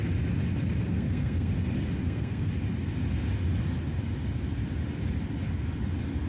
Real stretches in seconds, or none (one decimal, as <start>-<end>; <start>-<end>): 0.0-0.8; 1.5-2.0; 2.5-6.3